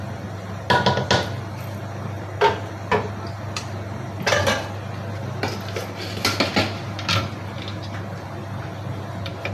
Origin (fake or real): real